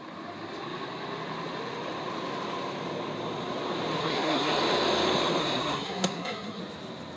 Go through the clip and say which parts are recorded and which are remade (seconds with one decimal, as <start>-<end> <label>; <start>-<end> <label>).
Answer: 0.0-4.0 recorded; 4.0-4.6 remade; 4.6-5.4 recorded; 5.4-6.6 remade; 6.6-7.2 recorded

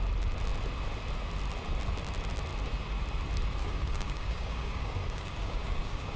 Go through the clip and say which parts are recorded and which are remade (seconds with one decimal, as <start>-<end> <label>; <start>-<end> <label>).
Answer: 0.0-3.6 recorded; 3.6-6.2 remade

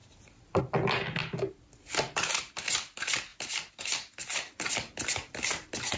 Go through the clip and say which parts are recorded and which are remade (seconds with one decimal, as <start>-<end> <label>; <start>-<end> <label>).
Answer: 0.0-0.6 remade; 0.6-6.0 recorded

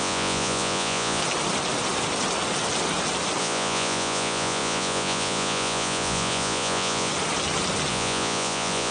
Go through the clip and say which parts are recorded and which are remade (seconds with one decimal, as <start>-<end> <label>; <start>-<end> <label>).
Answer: 0.0-1.2 remade; 1.2-3.4 recorded; 3.4-7.1 remade; 7.1-7.9 recorded; 7.9-8.9 remade

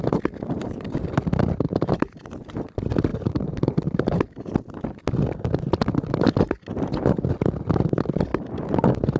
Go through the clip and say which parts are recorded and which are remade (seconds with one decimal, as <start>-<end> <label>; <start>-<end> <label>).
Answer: 0.0-3.1 recorded; 3.1-4.2 remade; 4.2-9.2 recorded

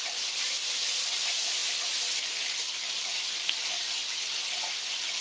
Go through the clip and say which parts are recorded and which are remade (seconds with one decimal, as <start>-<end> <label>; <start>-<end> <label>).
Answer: 0.0-5.2 recorded

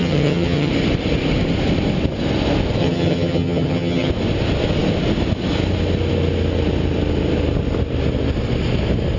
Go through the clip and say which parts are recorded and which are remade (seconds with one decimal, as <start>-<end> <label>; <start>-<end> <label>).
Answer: 0.0-0.7 remade; 0.7-2.8 recorded; 2.8-4.1 remade; 4.1-9.2 recorded